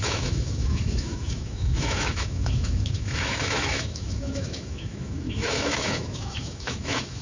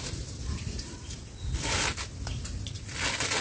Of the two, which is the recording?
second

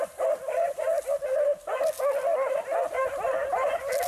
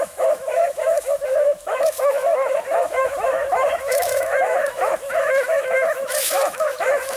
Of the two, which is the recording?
first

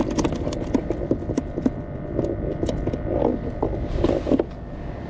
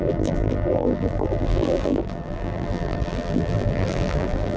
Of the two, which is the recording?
first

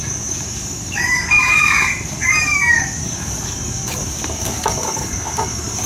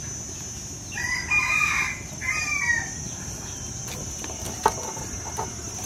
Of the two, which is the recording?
second